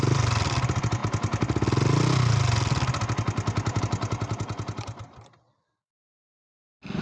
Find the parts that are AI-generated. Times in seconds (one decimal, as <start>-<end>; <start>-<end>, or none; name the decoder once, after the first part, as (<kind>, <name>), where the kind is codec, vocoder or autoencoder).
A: 0.0-1.0 (vocoder, BigVGAN v2); 3.8-6.1